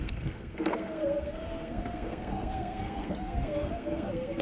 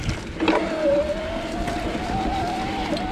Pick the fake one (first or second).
first